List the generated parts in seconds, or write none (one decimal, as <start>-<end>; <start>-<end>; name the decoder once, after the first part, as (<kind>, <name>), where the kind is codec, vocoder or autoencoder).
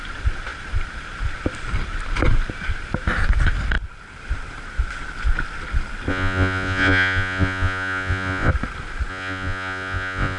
6.1-8.5 (vocoder, Vocos); 9.1-10.4